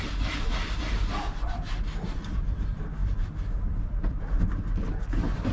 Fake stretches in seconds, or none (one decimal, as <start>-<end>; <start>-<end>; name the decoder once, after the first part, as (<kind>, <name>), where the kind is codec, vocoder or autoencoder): none